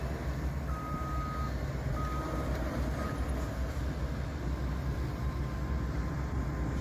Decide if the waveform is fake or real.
real